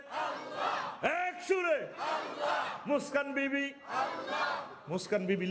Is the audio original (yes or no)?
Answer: yes